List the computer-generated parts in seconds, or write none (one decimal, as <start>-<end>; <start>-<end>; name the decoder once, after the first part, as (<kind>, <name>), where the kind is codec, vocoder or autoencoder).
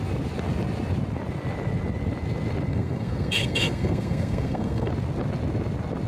2.7-4.9 (codec, SNAC)